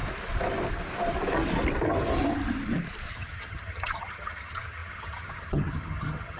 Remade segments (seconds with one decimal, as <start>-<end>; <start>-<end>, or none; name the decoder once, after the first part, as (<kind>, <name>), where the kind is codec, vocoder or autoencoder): 3.1-6.4 (vocoder, HiFi-GAN)